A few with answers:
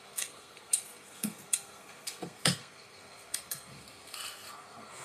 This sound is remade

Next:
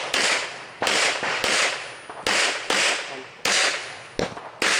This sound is recorded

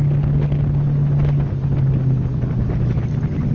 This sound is recorded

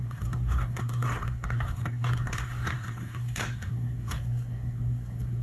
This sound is remade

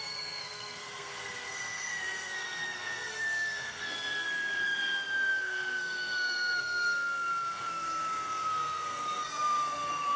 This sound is remade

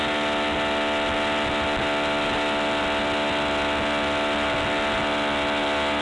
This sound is recorded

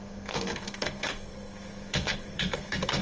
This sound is remade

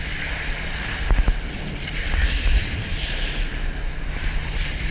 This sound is recorded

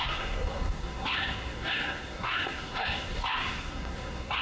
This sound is remade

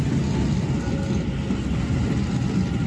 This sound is recorded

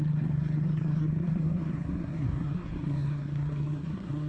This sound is remade